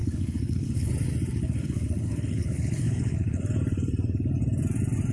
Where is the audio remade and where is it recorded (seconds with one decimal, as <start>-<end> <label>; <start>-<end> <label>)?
0.0-0.9 remade; 0.9-1.3 recorded; 1.3-3.4 remade; 3.4-5.1 recorded